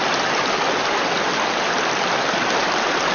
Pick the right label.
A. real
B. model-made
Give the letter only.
A